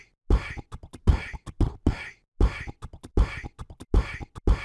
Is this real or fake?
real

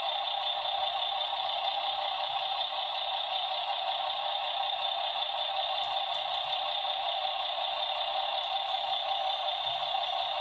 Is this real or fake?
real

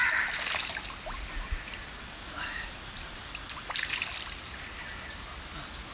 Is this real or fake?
real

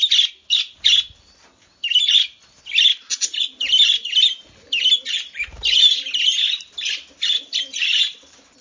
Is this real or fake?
real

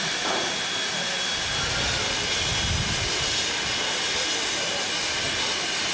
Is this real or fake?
real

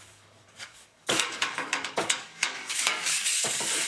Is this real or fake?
fake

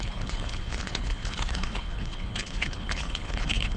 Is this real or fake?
fake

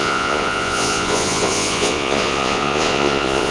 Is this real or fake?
fake